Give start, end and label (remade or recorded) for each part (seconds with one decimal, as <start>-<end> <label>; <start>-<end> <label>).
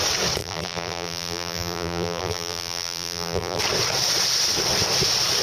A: 0.0-0.4 recorded; 0.4-3.6 remade; 3.6-5.4 recorded